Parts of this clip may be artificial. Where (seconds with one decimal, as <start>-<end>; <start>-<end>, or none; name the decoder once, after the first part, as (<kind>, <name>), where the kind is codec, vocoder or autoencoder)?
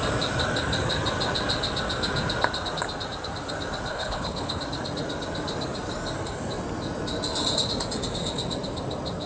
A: 3.9-4.6 (codec, HILCodec)